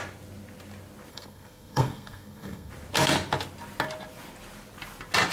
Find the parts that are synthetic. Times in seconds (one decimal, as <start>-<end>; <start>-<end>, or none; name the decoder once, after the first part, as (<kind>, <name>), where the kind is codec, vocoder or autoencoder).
1.1-2.7 (codec, SNAC)